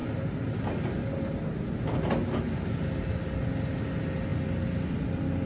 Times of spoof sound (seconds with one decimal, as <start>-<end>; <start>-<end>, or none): none